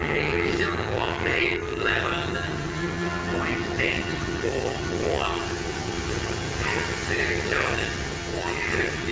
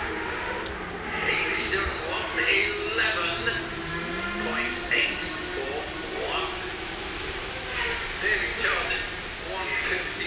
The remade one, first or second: first